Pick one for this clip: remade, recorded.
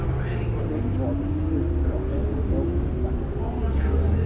recorded